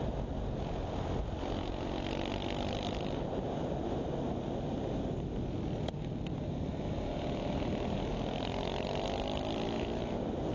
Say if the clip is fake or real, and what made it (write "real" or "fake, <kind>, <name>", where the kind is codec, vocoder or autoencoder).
real